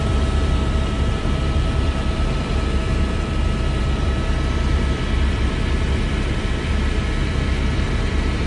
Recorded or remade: remade